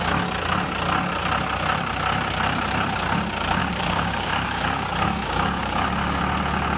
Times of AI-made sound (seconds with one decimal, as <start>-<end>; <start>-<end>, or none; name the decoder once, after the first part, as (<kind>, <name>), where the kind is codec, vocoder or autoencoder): 3.6-6.2 (codec, DAC)